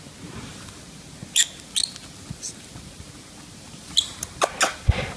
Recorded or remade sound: recorded